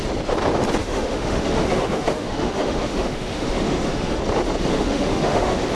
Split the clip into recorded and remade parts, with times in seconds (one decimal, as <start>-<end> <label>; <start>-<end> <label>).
0.0-0.8 recorded; 0.8-4.2 remade; 4.2-4.7 recorded; 4.7-5.7 remade